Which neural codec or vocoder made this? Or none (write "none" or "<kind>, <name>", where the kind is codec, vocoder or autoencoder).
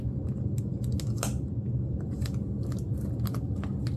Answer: none